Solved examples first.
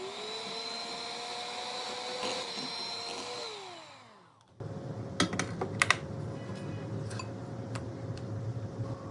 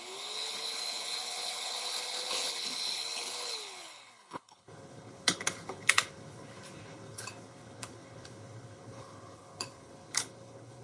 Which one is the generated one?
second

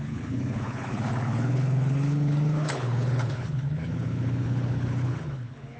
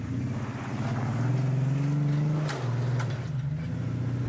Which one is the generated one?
first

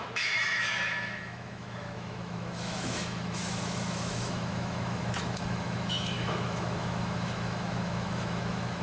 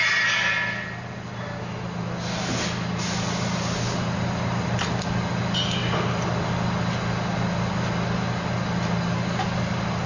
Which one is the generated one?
first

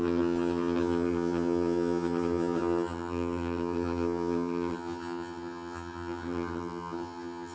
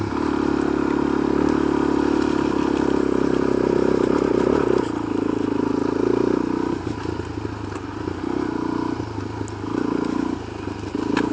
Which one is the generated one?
first